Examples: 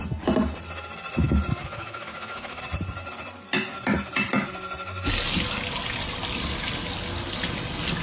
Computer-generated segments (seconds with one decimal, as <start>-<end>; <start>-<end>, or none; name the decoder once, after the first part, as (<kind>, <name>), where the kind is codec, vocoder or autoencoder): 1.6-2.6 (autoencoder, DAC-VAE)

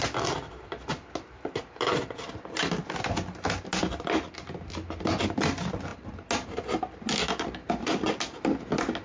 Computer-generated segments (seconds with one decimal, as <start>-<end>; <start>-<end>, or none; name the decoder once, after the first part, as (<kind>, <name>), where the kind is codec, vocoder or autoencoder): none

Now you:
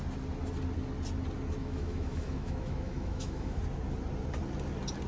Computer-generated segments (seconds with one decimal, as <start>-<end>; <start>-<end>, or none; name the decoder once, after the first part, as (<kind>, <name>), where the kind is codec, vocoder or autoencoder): 1.6-3.6 (autoencoder, DAC-VAE)

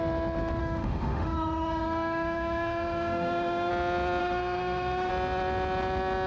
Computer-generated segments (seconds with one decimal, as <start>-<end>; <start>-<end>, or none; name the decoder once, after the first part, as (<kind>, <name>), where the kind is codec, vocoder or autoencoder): 0.6-3.7 (autoencoder, DAC-VAE); 4.2-5.1

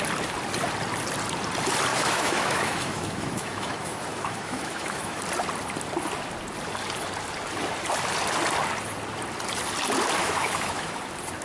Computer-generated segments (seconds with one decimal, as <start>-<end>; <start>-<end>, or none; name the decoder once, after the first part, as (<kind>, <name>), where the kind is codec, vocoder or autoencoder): 1.9-5.2 (autoencoder, DAC-VAE); 10.2-11.0